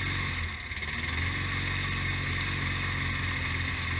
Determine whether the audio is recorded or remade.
recorded